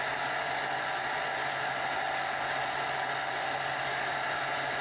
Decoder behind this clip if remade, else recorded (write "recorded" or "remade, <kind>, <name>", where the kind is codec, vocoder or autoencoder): recorded